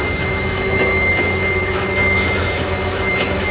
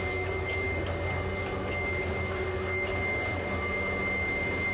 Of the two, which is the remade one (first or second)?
first